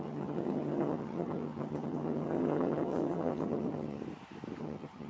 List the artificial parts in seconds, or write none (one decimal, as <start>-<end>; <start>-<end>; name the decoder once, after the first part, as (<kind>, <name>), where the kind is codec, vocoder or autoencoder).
0.0-4.0 (vocoder, HiFi-GAN); 4.6-5.1